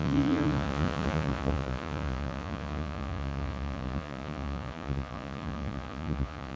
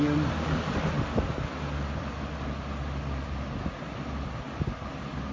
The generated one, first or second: first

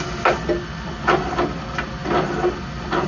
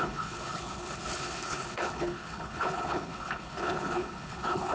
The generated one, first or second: second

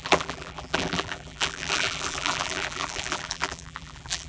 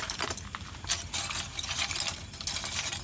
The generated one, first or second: first